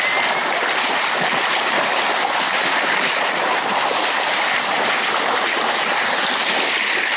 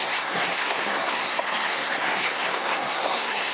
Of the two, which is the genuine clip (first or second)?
first